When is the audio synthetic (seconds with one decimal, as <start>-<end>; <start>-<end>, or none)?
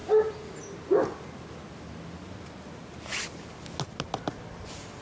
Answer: none